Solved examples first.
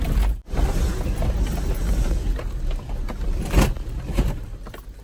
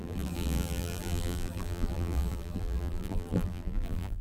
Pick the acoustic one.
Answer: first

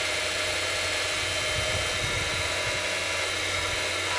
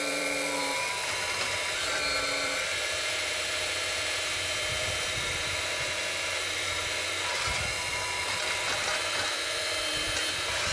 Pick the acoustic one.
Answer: first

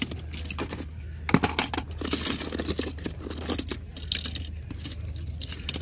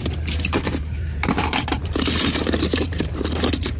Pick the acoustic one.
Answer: first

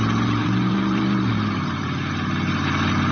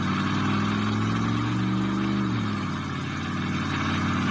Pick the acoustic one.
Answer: second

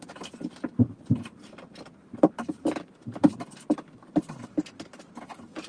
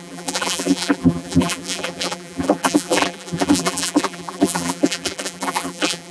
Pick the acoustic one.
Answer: first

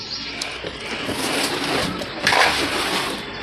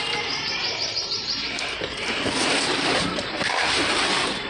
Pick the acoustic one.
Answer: first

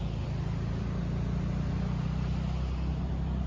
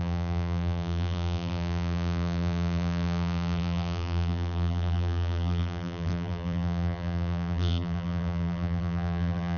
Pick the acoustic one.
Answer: first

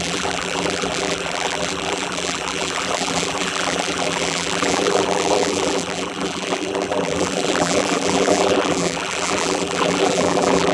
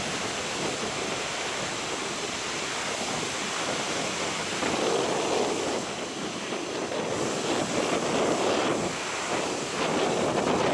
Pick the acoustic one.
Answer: second